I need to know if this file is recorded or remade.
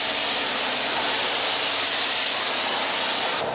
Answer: recorded